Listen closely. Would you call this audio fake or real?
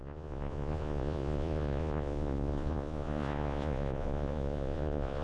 fake